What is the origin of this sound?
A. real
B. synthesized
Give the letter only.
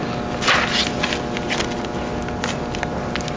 A